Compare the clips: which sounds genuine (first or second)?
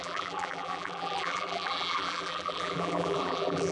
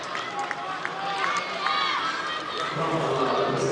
second